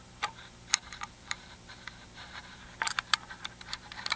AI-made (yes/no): yes